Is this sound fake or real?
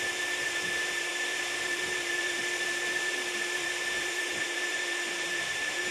fake